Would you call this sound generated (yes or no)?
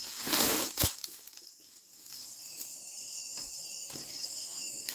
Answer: yes